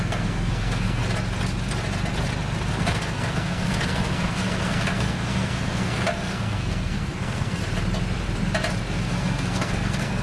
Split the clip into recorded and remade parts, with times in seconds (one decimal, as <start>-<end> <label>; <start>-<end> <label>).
0.0-1.0 remade; 1.0-2.7 recorded; 2.7-7.6 remade; 7.6-9.0 recorded; 9.0-10.2 remade